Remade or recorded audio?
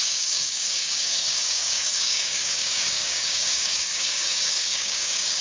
remade